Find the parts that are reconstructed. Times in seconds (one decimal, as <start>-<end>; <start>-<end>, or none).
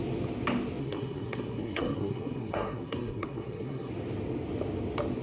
0.8-3.9